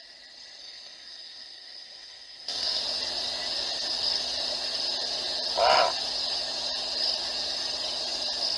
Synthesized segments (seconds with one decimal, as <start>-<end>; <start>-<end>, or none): 0.6-2.8

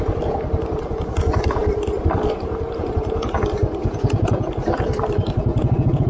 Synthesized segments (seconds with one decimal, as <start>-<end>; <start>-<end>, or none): 3.8-4.5; 5.5-6.1

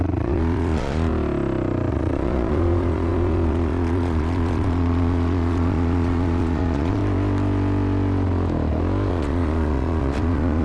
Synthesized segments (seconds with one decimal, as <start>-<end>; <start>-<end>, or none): 0.0-1.1; 1.9-7.0; 9.1-10.6

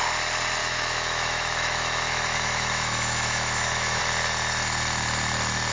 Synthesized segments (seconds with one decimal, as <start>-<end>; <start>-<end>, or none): 0.6-4.0

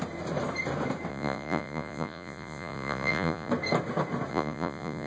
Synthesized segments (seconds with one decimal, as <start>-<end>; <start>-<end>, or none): 1.1-3.5; 4.3-5.1

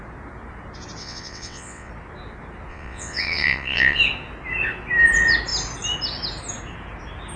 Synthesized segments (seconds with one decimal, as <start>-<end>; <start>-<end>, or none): 1.0-1.9; 2.7-4.0

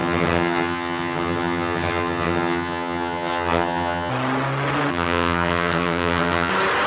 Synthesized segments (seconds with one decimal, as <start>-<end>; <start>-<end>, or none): 0.0-4.1; 4.9-6.5

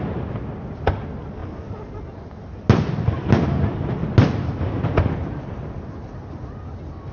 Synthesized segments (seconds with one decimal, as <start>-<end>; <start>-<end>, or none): 5.2-6.3